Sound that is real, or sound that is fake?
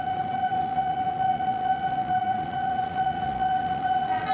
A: fake